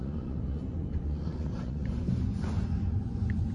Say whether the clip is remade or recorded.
remade